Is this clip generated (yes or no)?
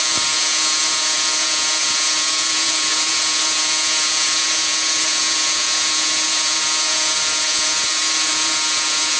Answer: yes